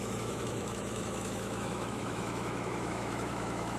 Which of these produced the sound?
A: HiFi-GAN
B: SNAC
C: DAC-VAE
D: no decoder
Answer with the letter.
C